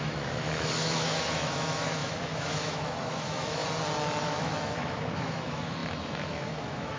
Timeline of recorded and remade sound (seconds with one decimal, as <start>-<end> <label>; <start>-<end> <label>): 0.0-3.6 remade; 3.6-4.2 recorded; 4.2-7.0 remade